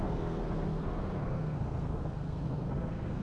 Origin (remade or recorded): remade